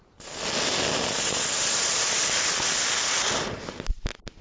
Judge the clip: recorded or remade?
recorded